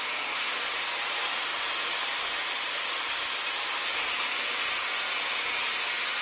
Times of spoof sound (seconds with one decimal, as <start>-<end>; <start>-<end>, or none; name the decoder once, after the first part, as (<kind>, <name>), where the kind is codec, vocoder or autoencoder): 0.0-1.5 (vocoder, BigVGAN v2); 3.4-3.9